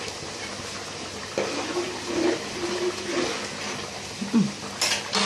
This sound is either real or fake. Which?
real